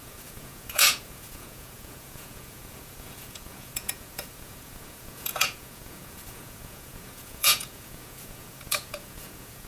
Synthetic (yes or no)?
yes